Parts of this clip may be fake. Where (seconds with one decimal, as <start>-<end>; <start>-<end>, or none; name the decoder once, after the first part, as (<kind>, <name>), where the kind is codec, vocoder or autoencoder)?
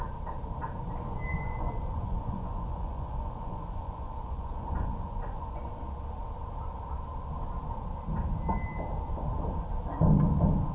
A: 1.3-5.6 (vocoder, Vocos)